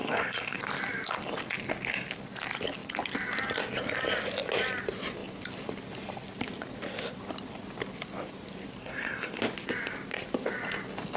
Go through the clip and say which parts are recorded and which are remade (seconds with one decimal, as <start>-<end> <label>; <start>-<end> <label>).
0.0-0.6 remade; 0.6-8.8 recorded; 8.8-9.4 remade; 9.4-11.2 recorded